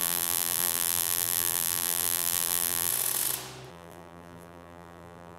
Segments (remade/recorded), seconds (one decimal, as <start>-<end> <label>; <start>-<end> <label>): 0.0-2.9 remade; 2.9-3.7 recorded; 3.7-5.4 remade